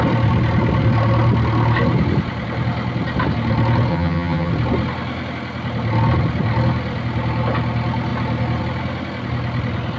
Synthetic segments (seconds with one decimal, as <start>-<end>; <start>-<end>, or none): 3.9-4.5